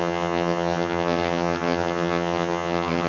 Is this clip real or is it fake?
fake